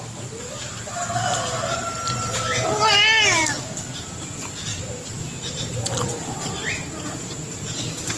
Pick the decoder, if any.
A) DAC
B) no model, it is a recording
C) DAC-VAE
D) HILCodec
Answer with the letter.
B